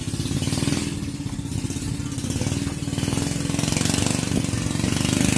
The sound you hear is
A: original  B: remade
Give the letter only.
A